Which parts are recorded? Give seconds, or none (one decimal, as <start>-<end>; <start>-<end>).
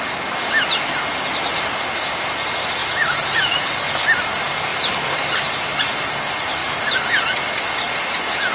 0.0-2.8; 3.7-8.5